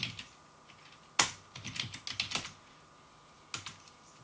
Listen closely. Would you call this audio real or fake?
real